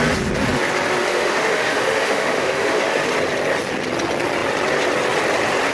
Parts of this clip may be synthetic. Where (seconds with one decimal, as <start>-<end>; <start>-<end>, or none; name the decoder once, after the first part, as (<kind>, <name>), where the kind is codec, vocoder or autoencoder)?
1.0-3.0 (autoencoder, DAC-VAE)